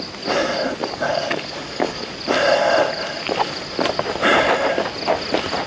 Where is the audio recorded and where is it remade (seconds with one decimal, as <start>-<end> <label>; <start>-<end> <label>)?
0.0-0.8 recorded; 0.8-2.1 remade; 2.1-5.7 recorded